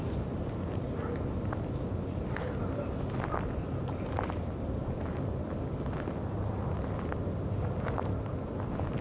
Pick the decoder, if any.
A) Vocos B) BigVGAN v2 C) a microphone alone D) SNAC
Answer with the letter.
C